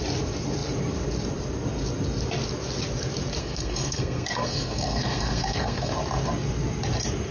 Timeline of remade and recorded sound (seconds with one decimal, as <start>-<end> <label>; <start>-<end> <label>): 0.0-3.4 recorded; 3.4-5.9 remade; 5.9-7.3 recorded